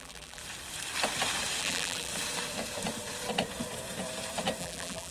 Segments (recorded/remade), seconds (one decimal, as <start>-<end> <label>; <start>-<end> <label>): 0.0-0.4 remade; 0.4-1.6 recorded; 1.6-2.1 remade; 2.1-4.6 recorded; 4.6-5.1 remade

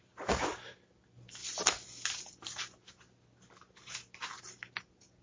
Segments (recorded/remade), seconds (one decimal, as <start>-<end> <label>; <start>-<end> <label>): 0.0-5.2 recorded

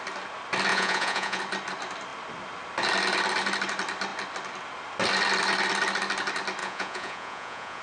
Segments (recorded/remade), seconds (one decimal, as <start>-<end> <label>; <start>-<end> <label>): 0.0-0.7 recorded; 0.7-1.4 remade; 1.4-6.6 recorded; 6.6-7.8 remade

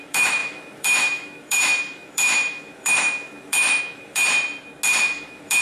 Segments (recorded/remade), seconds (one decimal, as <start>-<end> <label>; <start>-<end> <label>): 0.0-4.3 remade; 4.3-5.0 recorded; 5.0-5.6 remade

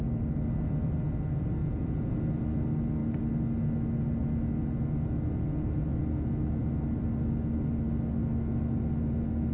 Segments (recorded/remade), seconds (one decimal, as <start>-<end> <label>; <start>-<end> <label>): 0.0-1.6 recorded; 1.6-2.2 remade; 2.2-9.5 recorded

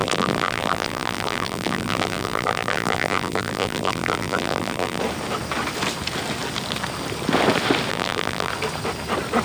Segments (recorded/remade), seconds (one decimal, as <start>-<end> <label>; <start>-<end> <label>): 0.0-5.0 remade; 5.0-7.9 recorded; 7.9-8.5 remade; 8.5-9.4 recorded